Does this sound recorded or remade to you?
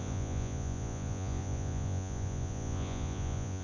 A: remade